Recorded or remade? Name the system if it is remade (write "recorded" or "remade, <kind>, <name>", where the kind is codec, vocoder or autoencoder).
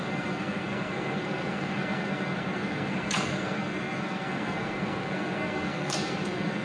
remade, codec, SNAC